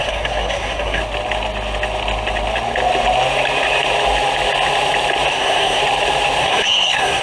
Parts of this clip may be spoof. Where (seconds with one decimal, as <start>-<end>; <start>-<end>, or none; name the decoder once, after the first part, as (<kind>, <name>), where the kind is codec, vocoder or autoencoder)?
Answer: 0.0-1.0 (codec, SNAC); 5.3-5.8; 6.4-7.2